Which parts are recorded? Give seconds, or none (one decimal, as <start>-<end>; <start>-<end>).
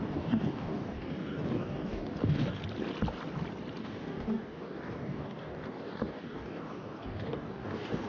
2.6-3.8